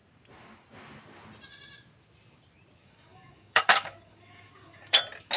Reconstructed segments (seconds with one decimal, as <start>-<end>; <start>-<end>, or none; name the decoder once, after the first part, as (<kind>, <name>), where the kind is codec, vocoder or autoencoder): 2.8-5.0 (codec, DAC)